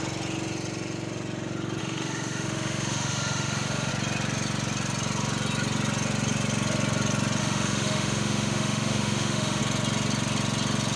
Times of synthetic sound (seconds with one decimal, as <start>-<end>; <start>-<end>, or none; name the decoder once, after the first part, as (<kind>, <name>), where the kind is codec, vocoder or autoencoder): 1.8-3.9 (autoencoder, DAC-VAE); 7.4-9.6